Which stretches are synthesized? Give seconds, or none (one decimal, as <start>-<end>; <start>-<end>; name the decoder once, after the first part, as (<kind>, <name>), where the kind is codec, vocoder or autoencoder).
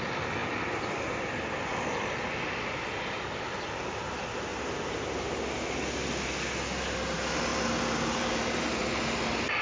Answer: 4.5-5.8 (vocoder, BigVGAN v2); 7.5-8.8